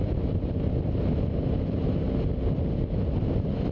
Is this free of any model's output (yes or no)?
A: yes